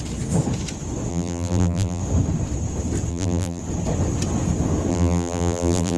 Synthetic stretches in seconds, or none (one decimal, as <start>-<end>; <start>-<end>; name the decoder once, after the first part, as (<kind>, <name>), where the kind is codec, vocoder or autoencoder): 1.1-2.0 (vocoder, BigVGAN v2); 3.1-3.6; 4.9-6.0